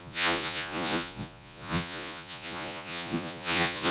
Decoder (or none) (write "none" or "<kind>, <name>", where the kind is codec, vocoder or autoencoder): vocoder, Vocos